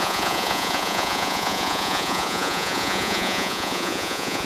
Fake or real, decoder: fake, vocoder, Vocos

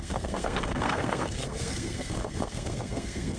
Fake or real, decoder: fake, codec, SNAC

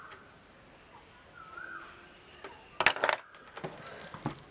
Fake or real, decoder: real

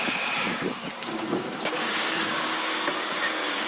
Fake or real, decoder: fake, codec, DAC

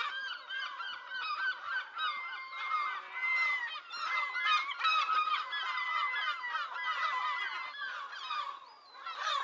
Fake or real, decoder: real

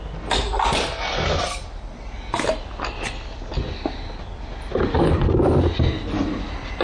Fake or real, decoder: real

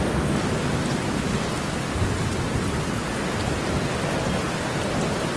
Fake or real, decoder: real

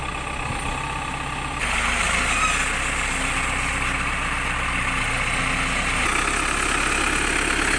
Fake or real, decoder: real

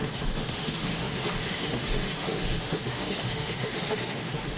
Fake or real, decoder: fake, autoencoder, DAC-VAE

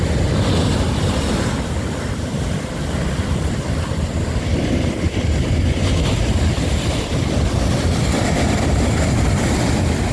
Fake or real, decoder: real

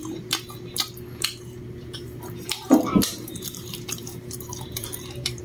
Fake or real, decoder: fake, vocoder, BigVGAN v2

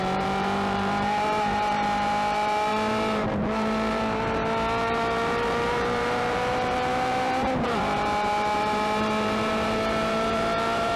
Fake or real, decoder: fake, vocoder, BigVGAN v2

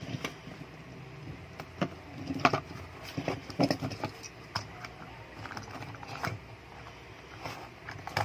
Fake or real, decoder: real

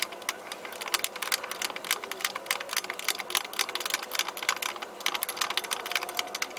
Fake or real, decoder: real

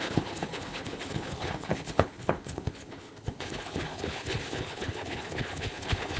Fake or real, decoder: fake, codec, HILCodec